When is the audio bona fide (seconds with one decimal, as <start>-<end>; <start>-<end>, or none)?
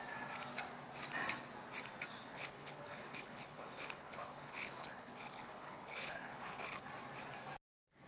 0.0-2.2; 6.9-8.1